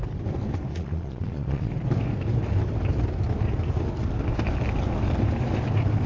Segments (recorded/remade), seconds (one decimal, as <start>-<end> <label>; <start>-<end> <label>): 0.0-0.7 recorded; 0.7-1.7 remade; 1.7-6.1 recorded